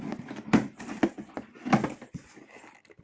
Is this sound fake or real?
real